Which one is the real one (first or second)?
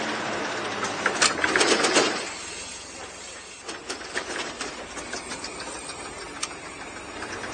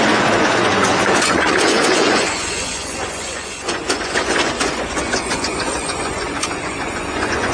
first